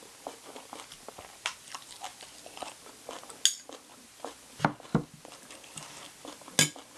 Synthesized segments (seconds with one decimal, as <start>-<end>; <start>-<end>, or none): none